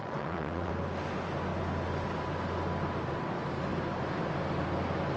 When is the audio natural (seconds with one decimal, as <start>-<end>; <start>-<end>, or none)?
0.7-5.2